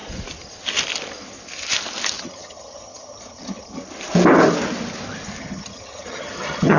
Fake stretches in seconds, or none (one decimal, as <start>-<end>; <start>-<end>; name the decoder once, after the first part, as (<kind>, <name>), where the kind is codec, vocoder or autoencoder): 2.2-3.8 (vocoder, HiFi-GAN); 5.4-6.8